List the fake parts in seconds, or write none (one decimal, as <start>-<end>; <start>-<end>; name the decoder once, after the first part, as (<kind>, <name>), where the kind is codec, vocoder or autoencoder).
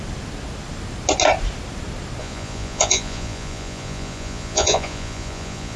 2.2-5.8 (vocoder, Vocos)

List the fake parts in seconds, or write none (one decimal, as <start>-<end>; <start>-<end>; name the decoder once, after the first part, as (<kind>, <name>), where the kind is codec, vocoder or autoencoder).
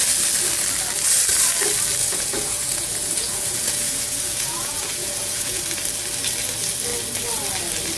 2.0-5.6 (vocoder, Vocos)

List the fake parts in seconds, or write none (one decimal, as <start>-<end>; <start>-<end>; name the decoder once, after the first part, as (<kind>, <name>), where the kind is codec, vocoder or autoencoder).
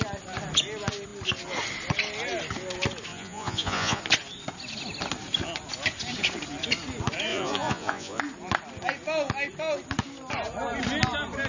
3.1-4.0 (vocoder, Vocos); 7.3-8.2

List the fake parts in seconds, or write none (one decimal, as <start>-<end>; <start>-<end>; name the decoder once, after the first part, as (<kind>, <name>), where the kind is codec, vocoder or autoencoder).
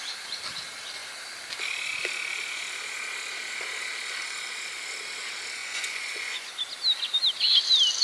5.6-6.5 (vocoder, Vocos)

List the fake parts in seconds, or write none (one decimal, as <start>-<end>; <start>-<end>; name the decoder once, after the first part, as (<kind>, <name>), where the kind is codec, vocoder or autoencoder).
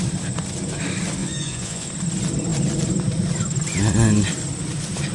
1.2-1.9 (vocoder, Vocos)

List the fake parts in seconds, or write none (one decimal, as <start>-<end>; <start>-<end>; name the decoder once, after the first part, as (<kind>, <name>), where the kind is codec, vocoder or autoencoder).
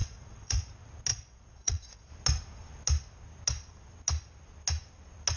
0.0-0.7 (vocoder, Vocos); 1.1-2.1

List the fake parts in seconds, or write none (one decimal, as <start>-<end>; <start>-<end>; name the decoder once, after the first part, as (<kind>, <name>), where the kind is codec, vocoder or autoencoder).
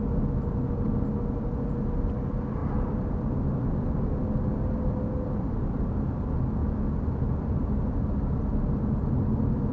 none